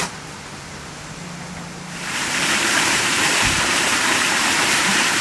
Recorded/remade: remade